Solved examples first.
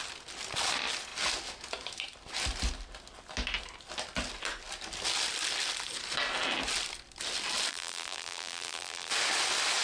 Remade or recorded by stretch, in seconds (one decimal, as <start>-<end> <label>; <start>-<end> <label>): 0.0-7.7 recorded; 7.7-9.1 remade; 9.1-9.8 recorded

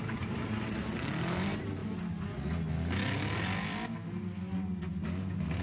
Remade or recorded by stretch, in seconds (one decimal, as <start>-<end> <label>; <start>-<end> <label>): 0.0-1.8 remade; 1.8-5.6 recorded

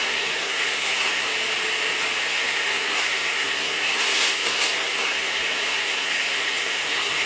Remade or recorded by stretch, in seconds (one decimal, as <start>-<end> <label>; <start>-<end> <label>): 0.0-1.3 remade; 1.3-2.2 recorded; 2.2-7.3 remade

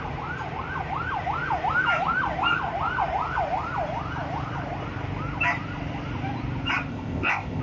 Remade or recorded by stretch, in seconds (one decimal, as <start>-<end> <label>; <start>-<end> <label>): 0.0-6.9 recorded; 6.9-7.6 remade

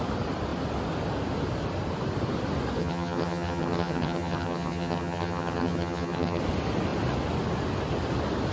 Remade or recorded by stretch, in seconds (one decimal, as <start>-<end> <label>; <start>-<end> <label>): 0.0-2.8 recorded; 2.8-6.4 remade; 6.4-8.5 recorded